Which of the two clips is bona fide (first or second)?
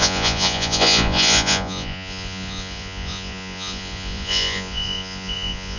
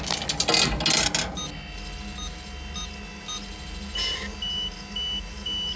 second